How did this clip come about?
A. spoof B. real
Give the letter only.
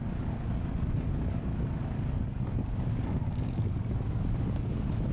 A